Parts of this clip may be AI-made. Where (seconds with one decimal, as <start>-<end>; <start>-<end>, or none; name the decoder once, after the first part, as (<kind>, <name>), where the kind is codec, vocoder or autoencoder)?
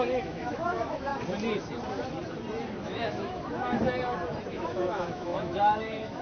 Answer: 0.0-1.1 (autoencoder, DAC-VAE); 2.8-3.8; 4.5-6.2